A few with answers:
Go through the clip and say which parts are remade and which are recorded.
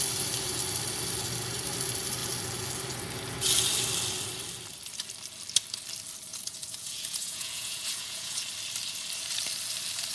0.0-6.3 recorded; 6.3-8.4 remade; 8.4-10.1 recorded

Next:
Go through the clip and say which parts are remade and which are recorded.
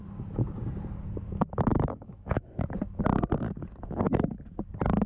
0.0-1.7 recorded; 1.7-2.5 remade; 2.5-5.1 recorded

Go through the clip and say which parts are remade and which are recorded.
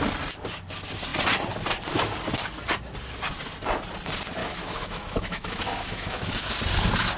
0.0-4.4 recorded; 4.4-6.5 remade; 6.5-7.2 recorded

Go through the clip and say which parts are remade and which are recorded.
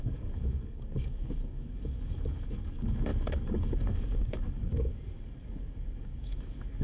0.0-6.8 remade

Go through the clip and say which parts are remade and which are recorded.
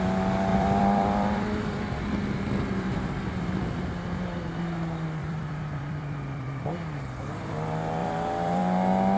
0.0-0.5 recorded; 0.5-4.6 remade; 4.6-5.2 recorded; 5.2-6.6 remade; 6.6-8.0 recorded; 8.0-8.6 remade; 8.6-9.2 recorded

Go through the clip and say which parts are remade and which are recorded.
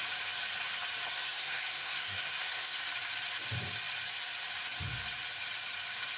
0.0-1.1 recorded; 1.1-2.8 remade; 2.8-6.2 recorded